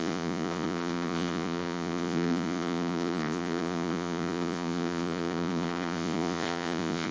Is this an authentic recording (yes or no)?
no